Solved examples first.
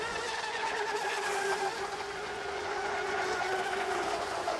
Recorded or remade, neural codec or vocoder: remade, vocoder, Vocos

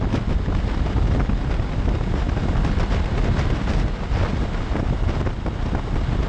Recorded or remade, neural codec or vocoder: recorded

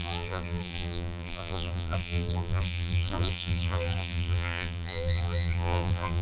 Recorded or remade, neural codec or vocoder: remade, vocoder, BigVGAN v2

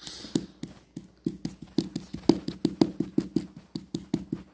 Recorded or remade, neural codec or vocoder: recorded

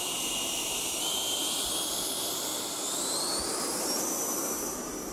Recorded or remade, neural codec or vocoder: recorded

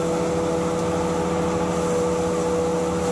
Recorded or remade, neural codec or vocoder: recorded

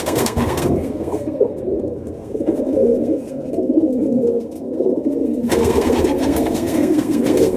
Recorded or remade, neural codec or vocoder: remade, codec, SNAC